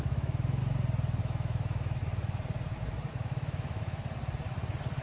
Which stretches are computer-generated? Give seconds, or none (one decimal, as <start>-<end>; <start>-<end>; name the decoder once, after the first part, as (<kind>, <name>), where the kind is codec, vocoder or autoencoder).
0.0-0.6 (autoencoder, DAC-VAE); 1.2-2.0; 3.2-4.0